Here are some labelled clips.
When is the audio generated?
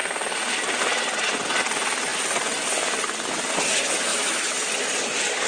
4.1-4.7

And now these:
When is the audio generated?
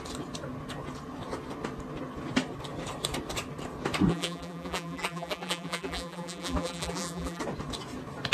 4.1-7.4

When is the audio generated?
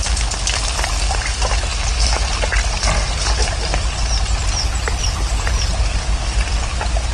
none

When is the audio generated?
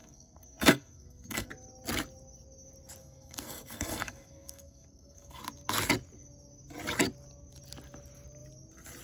0.0-1.5; 3.0-5.4